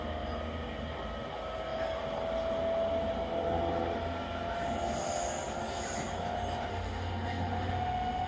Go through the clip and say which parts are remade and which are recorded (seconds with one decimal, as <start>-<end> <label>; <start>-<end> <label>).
0.0-6.7 recorded; 6.7-8.3 remade